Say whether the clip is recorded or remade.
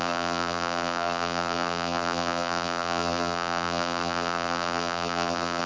remade